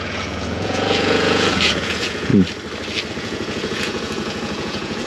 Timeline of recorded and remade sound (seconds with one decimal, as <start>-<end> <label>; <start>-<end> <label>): 0.0-2.3 remade; 2.3-3.1 recorded; 3.1-5.1 remade